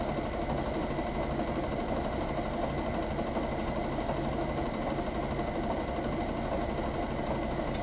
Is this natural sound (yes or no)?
yes